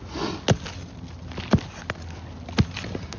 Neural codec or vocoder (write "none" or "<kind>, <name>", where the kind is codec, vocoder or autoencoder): none